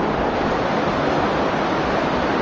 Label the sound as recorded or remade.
recorded